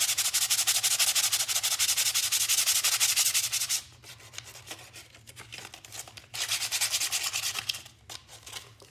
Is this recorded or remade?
recorded